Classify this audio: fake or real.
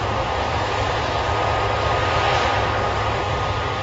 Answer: real